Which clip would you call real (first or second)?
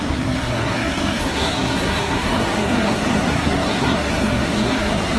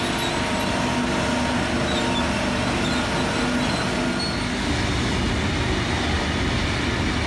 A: second